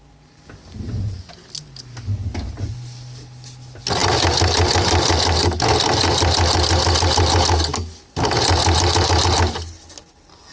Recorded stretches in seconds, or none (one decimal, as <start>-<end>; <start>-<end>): 0.0-10.5